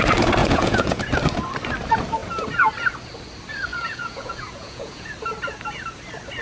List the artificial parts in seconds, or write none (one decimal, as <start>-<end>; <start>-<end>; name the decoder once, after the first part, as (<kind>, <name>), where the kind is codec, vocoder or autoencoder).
0.4-1.0 (vocoder, Vocos); 3.7-5.1